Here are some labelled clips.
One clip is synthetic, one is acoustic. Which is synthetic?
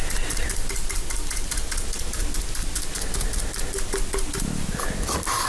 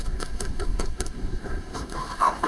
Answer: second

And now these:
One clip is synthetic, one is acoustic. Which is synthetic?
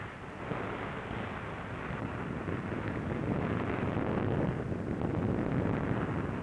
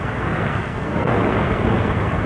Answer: second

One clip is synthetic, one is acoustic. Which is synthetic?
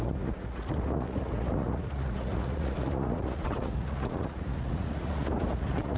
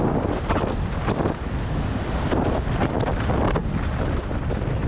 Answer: first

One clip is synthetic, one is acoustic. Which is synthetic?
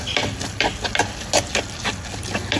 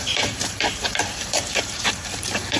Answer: second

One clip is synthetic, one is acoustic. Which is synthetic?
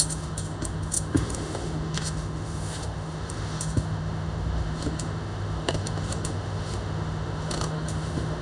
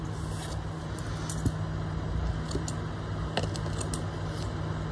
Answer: first